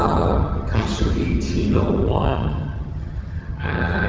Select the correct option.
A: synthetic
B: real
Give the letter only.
A